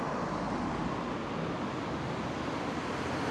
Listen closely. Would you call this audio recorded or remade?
recorded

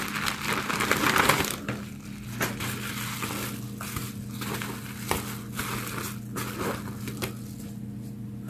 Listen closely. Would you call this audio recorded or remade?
recorded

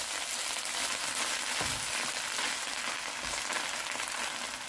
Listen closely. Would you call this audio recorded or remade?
recorded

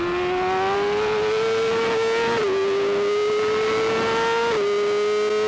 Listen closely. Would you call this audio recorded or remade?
recorded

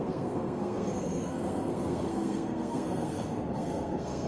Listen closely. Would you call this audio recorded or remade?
remade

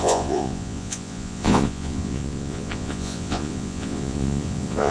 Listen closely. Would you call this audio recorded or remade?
remade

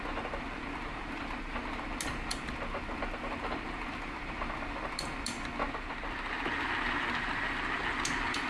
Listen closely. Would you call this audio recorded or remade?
recorded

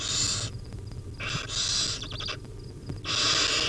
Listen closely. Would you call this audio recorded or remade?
recorded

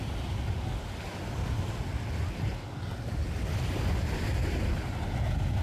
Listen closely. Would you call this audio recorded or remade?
recorded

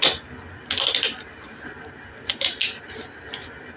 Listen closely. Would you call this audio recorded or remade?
recorded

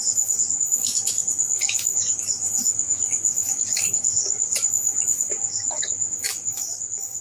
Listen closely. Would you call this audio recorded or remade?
remade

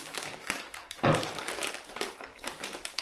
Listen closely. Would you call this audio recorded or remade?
remade